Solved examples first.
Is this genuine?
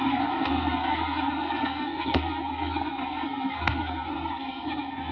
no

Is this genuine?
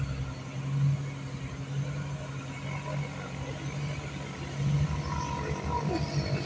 yes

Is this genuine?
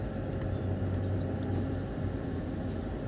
yes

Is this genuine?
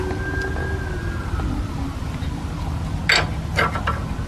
yes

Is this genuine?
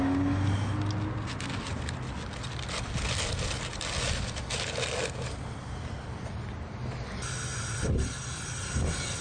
yes